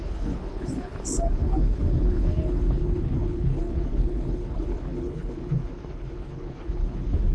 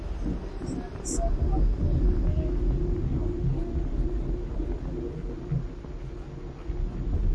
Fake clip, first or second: first